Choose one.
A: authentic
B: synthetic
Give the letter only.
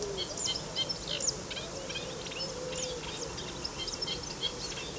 A